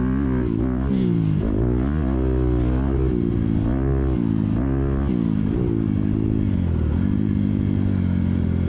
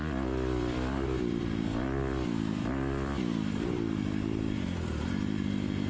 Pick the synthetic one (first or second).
second